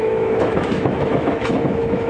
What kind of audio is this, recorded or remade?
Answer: remade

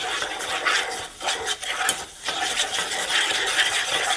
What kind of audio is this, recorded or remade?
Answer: recorded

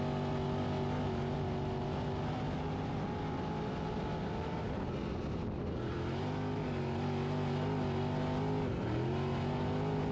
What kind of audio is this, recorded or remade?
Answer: recorded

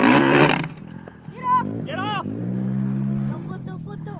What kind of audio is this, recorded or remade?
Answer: recorded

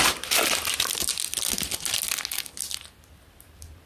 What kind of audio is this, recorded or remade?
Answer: recorded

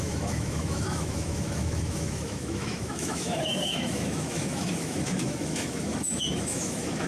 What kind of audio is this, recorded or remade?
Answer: remade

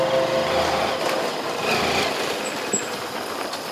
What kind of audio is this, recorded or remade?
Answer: recorded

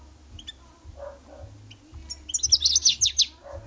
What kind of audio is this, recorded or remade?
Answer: recorded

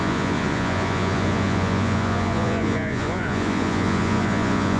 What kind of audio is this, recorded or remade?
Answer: remade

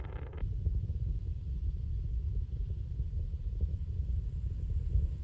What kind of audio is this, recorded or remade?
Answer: recorded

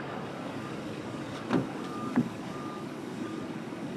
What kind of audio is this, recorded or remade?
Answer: remade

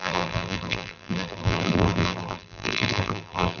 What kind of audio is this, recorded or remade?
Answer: remade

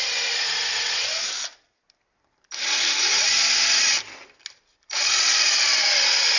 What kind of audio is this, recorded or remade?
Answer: recorded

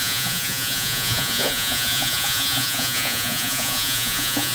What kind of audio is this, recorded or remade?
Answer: remade